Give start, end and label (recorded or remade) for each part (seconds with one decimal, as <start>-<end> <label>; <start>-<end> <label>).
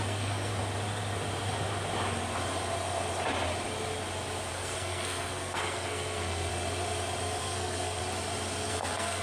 0.0-0.5 remade; 0.5-4.5 recorded; 4.5-6.5 remade; 6.5-7.4 recorded; 7.4-8.0 remade; 8.0-8.7 recorded; 8.7-9.2 remade